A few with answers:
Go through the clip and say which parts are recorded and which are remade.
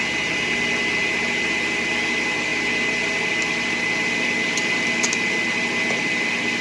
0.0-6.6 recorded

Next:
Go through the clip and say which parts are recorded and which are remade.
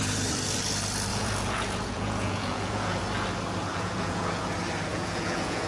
0.0-1.1 recorded; 1.1-3.0 remade; 3.0-3.7 recorded; 3.7-4.5 remade; 4.5-4.9 recorded; 4.9-5.7 remade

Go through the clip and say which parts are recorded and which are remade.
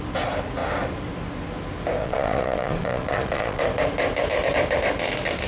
0.0-2.0 recorded; 2.0-3.6 remade; 3.6-5.5 recorded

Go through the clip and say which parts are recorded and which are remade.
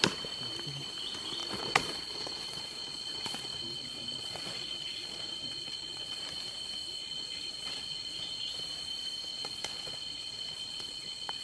0.0-1.4 recorded; 1.4-6.2 remade; 6.2-7.0 recorded; 7.0-8.5 remade; 8.5-9.3 recorded; 9.3-11.4 remade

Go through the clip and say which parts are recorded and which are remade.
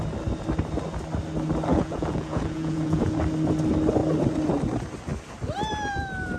0.0-1.7 recorded; 1.7-3.2 remade; 3.2-6.4 recorded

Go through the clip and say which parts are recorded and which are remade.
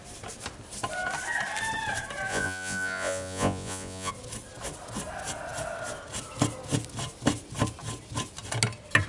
0.0-2.3 recorded; 2.3-4.1 remade; 4.1-9.1 recorded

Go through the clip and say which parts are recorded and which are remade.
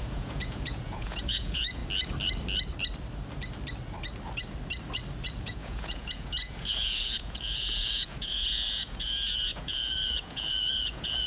0.0-1.8 remade; 1.8-5.4 recorded; 5.4-11.3 remade